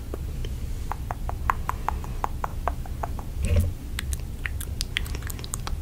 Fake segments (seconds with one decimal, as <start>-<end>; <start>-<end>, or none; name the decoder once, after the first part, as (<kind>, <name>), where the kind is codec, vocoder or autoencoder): none